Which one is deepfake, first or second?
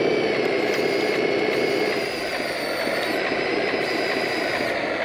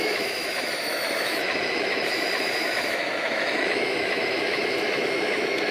second